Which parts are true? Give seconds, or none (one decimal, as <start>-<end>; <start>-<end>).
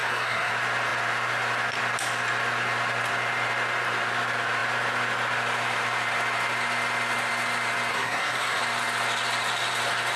0.5-7.9; 8.6-10.2